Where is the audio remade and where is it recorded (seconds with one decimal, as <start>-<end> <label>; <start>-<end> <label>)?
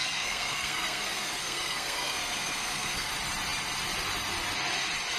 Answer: 0.0-3.1 remade; 3.1-5.2 recorded